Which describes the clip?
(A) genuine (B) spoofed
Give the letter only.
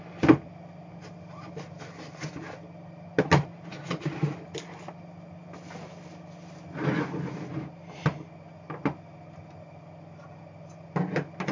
A